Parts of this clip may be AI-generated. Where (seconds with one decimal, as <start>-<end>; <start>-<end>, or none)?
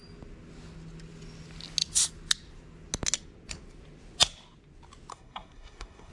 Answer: 5.1-6.1